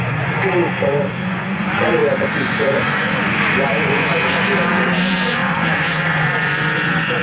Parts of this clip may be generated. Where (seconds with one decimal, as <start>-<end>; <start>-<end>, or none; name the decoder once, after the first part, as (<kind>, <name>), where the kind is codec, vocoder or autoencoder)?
0.0-7.2 (vocoder, Vocos)

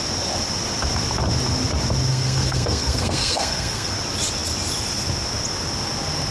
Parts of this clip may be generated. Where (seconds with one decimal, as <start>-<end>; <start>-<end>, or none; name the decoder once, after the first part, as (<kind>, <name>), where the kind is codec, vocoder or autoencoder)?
2.1-3.9 (codec, SNAC)

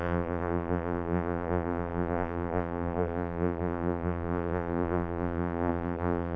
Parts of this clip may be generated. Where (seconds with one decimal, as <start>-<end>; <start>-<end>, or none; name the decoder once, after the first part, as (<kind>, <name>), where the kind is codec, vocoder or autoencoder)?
0.0-6.4 (vocoder, BigVGAN v2)

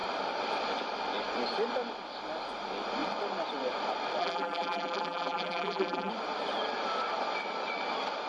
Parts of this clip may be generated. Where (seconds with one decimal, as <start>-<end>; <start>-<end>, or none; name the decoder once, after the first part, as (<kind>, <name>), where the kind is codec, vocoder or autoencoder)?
4.2-6.1 (vocoder, BigVGAN v2)